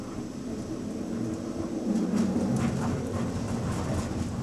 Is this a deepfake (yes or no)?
no